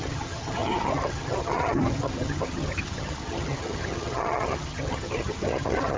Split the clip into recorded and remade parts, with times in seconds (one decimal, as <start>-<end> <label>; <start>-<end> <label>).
0.0-6.0 remade